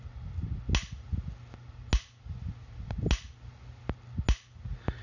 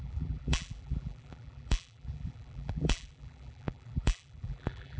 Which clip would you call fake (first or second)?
second